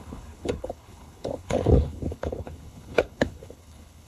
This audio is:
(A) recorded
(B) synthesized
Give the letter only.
B